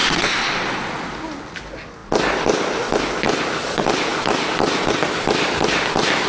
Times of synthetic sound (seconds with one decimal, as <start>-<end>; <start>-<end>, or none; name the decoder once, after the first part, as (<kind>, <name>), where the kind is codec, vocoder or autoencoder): 0.0-1.1 (vocoder, Vocos)